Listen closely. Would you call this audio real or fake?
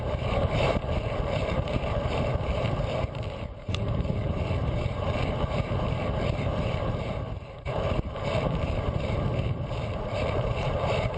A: fake